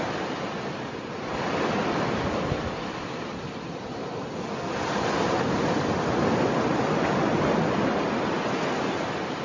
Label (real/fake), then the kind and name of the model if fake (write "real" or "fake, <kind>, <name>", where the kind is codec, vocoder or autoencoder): real